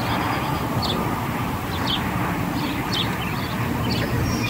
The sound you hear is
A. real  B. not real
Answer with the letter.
A